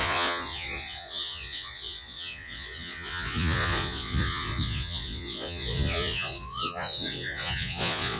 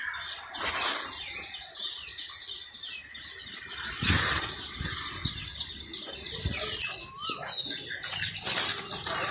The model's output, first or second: first